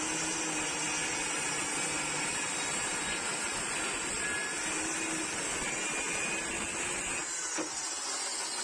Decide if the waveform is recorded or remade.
recorded